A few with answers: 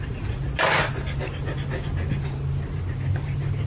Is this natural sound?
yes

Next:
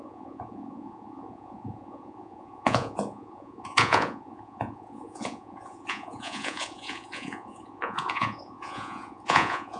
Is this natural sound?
no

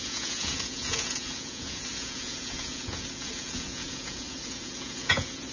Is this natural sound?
no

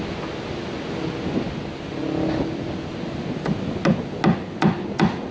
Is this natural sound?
yes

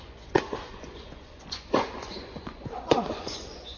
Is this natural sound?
no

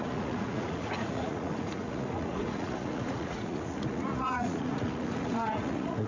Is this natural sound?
no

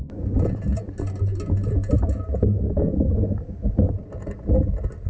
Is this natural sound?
yes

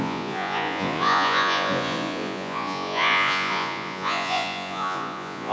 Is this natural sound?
no